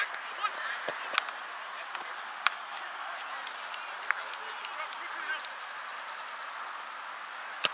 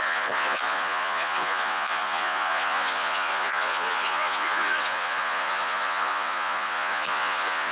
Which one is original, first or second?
first